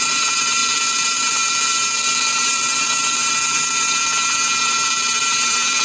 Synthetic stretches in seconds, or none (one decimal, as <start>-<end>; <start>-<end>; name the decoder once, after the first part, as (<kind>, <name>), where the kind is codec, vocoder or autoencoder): 0.0-5.8 (vocoder, BigVGAN v2)